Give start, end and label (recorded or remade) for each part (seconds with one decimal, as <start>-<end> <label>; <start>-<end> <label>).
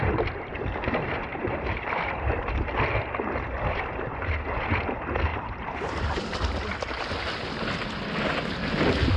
0.0-1.3 recorded; 1.3-2.4 remade; 2.4-5.3 recorded; 5.3-6.2 remade; 6.2-9.2 recorded